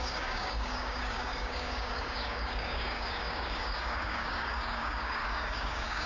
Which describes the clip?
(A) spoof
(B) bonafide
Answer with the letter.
A